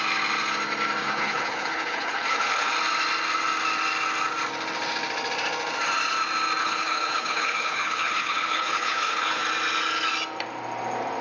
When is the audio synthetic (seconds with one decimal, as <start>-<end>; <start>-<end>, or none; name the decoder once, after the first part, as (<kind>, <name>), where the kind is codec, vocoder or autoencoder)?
1.0-2.7 (codec, HILCodec); 6.6-9.4